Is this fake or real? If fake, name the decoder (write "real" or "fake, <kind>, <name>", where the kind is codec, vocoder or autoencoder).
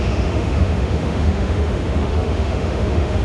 fake, autoencoder, DAC-VAE